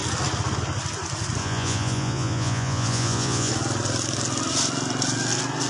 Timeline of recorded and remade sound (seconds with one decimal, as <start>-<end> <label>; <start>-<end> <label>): 0.0-1.4 recorded; 1.4-3.5 remade; 3.5-5.7 recorded